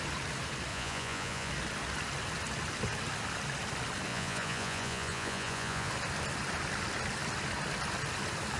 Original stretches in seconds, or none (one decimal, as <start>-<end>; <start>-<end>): 0.0-0.7; 1.5-4.1; 5.9-8.6